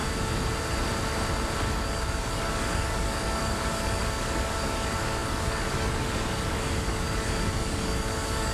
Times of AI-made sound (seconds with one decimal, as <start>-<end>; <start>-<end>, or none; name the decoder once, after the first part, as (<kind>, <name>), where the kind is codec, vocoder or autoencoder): 1.7-8.5 (codec, DAC)